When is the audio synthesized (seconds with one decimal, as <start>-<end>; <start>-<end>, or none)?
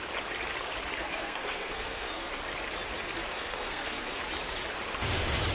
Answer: 1.0-2.4; 3.2-4.2